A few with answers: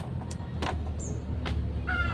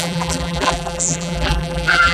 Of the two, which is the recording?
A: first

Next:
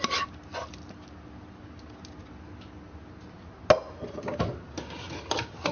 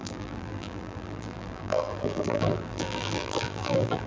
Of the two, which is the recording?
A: first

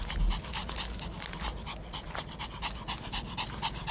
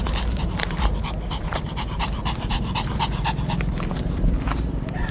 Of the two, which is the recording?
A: first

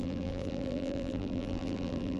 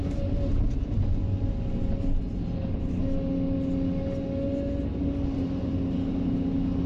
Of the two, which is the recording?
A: second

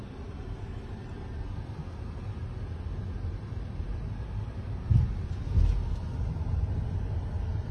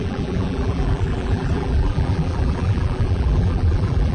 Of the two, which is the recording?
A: first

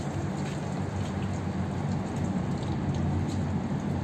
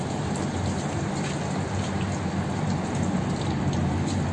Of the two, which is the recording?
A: first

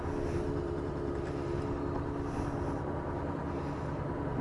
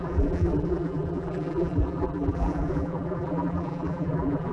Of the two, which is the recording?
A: first